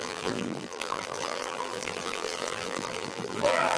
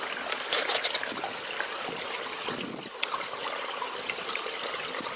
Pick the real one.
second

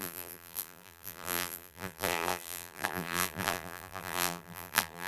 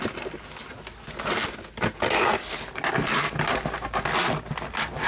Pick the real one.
second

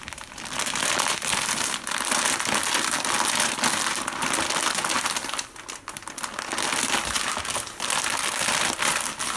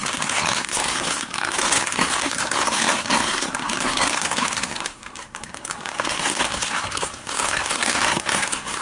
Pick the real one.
first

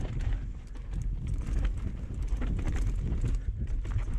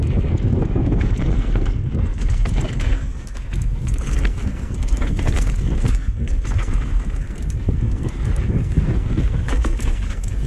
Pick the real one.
first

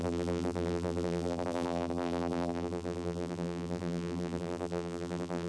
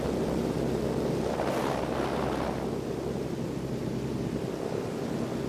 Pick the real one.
second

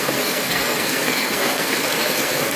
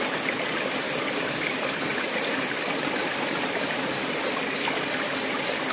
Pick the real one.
second